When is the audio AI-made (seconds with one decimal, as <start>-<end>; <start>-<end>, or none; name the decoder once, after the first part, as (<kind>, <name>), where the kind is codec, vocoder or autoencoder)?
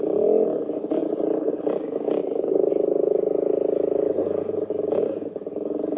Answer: 1.0-1.6 (vocoder, BigVGAN v2); 2.2-2.7